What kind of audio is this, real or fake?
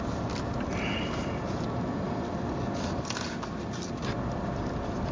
real